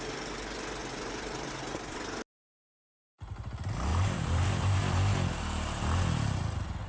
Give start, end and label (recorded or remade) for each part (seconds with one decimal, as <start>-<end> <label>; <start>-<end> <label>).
0.0-0.8 recorded; 0.8-1.5 remade; 1.5-3.9 recorded; 3.9-4.8 remade; 4.8-6.9 recorded